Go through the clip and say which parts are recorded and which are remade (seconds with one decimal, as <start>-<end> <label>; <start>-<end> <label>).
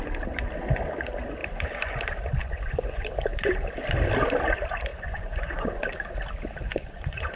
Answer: 0.0-1.4 recorded; 1.4-2.0 remade; 2.0-2.4 recorded; 2.4-3.1 remade; 3.1-4.9 recorded; 4.9-5.8 remade; 5.8-6.7 recorded; 6.7-7.4 remade